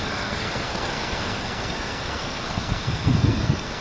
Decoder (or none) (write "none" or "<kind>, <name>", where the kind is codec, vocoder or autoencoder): codec, SNAC